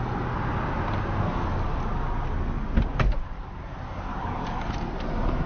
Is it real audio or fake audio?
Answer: real